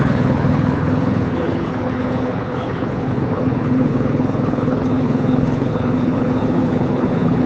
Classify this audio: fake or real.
fake